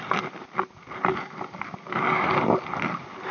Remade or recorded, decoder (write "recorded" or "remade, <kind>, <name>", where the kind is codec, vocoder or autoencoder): recorded